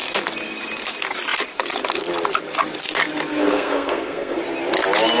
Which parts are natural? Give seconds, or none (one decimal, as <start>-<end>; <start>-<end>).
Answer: 0.0-3.4; 4.4-5.2